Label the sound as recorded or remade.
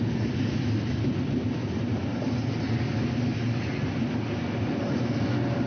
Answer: recorded